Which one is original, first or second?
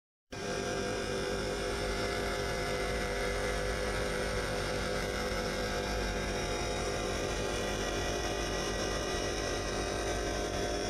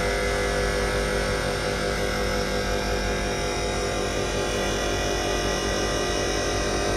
second